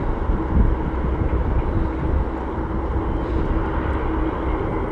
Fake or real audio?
real